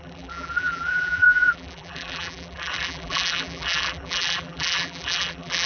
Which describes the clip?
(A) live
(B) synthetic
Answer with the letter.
B